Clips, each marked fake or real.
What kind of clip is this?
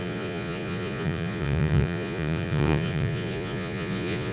fake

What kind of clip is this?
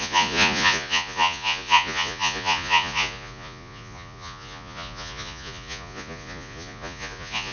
fake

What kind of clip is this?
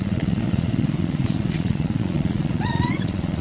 fake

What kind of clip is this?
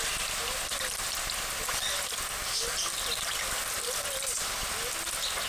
real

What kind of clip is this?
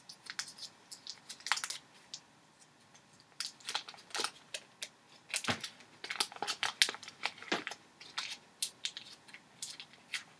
real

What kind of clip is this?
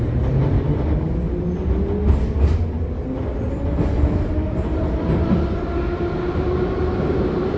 real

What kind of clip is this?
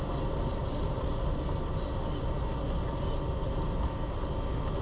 real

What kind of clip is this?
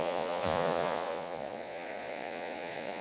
fake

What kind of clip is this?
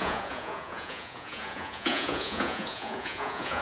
fake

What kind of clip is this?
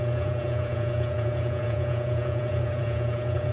fake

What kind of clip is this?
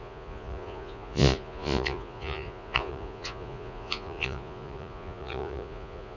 fake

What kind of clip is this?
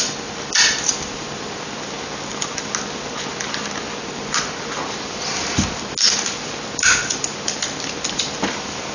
real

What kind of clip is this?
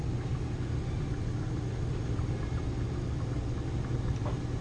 real